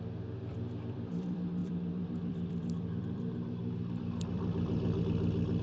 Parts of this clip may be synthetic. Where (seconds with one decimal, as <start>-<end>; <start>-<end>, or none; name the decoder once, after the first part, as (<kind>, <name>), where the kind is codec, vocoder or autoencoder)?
0.0-5.6 (vocoder, BigVGAN v2)